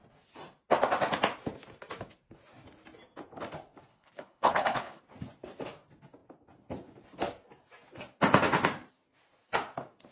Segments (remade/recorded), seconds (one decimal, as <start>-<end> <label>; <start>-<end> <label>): 0.0-3.9 recorded; 3.9-5.0 remade; 5.0-10.1 recorded